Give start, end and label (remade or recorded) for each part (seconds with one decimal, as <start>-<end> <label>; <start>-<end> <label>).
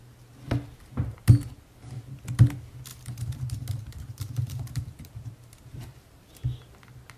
0.0-2.9 recorded; 2.9-6.6 remade; 6.6-7.2 recorded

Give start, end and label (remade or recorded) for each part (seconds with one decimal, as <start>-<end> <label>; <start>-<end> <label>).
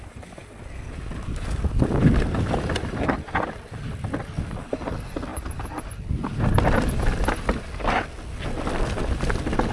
0.0-9.7 recorded